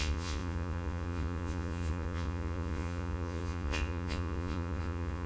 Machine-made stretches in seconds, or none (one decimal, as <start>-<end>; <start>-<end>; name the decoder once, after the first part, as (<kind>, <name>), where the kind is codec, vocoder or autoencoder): 0.0-5.3 (vocoder, Vocos)